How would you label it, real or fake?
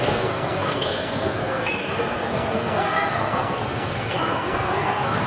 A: fake